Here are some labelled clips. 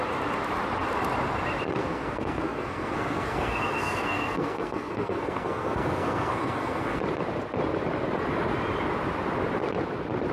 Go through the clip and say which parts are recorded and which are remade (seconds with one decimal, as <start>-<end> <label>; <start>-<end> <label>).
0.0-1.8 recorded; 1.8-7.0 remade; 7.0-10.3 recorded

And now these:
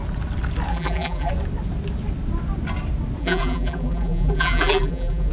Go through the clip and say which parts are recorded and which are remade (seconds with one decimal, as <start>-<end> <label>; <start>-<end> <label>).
0.0-0.7 recorded; 0.7-1.3 remade; 1.3-3.2 recorded; 3.2-5.3 remade

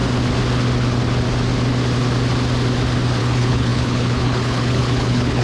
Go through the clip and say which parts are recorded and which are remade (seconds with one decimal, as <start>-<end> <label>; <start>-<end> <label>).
0.0-3.2 recorded; 3.2-5.4 remade

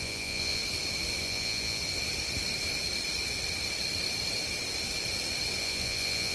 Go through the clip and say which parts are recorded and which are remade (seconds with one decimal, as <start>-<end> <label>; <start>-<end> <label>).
0.0-0.6 remade; 0.6-1.2 recorded; 1.2-1.8 remade; 1.8-5.6 recorded; 5.6-6.3 remade

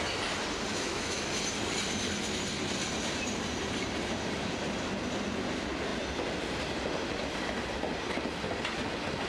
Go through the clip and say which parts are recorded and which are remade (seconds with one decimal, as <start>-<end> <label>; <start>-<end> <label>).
0.0-0.7 recorded; 0.7-1.3 remade; 1.3-9.3 recorded

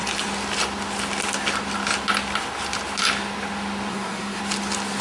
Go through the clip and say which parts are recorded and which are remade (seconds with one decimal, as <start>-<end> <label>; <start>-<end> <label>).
0.0-3.9 recorded; 3.9-4.4 remade; 4.4-5.0 recorded